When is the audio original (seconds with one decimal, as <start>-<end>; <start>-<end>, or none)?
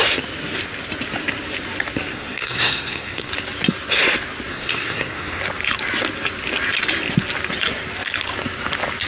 0.0-2.1; 3.3-4.5; 5.4-9.1